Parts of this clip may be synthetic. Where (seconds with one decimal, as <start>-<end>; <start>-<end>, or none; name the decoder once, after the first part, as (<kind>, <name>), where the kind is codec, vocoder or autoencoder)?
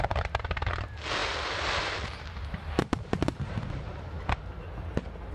1.2-4.4 (vocoder, BigVGAN v2)